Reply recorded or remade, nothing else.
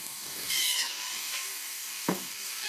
remade